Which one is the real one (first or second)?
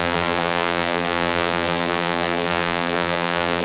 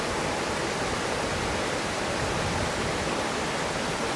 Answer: second